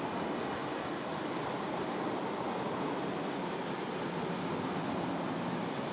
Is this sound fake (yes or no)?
no